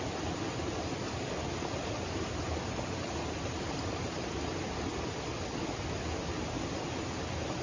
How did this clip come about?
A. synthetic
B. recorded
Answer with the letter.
B